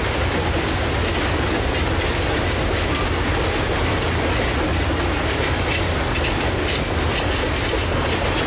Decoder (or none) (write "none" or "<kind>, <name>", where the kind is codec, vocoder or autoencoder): none